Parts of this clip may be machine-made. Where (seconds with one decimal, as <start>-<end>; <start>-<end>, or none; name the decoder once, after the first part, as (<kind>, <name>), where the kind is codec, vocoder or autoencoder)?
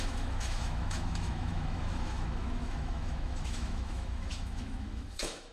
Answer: 0.0-5.5 (autoencoder, DAC-VAE)